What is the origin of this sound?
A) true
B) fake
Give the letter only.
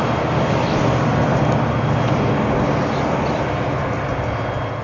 A